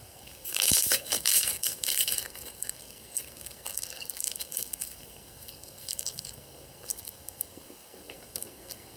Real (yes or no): no